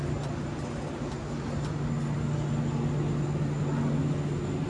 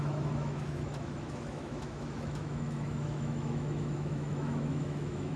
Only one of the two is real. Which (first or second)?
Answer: first